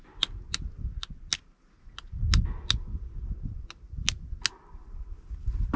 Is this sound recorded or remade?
recorded